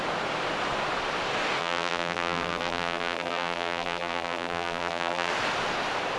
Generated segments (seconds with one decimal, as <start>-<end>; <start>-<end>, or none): 1.6-5.3